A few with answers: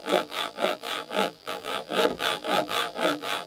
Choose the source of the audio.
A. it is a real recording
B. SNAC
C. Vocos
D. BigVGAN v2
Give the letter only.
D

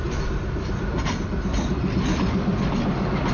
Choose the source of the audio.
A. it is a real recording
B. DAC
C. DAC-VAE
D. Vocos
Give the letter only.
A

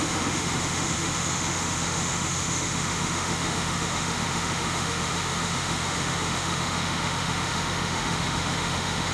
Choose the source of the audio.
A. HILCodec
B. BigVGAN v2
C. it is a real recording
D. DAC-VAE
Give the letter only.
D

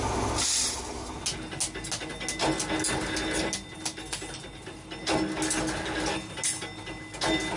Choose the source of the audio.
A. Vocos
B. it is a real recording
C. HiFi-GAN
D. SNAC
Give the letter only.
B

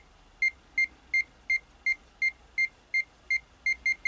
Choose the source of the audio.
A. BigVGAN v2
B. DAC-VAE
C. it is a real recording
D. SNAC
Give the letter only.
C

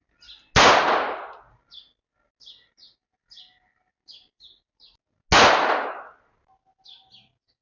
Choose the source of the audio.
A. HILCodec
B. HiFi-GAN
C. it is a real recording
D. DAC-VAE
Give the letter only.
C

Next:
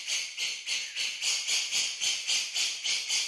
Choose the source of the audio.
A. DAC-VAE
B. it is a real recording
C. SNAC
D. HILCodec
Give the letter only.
B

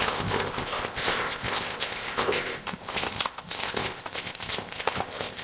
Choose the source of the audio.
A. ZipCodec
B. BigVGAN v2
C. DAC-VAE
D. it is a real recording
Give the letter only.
A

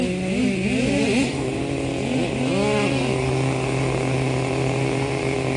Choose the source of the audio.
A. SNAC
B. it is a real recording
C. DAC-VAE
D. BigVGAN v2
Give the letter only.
B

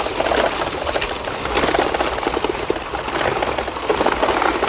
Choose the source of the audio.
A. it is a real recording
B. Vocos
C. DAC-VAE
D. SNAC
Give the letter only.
A